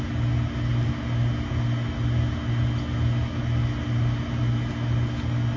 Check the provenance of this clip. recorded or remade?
recorded